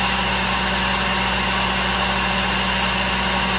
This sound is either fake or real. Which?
real